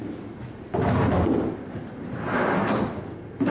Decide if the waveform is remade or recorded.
recorded